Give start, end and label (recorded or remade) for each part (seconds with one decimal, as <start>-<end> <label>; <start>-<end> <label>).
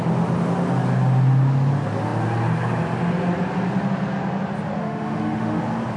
0.0-4.8 recorded; 4.8-5.6 remade; 5.6-6.0 recorded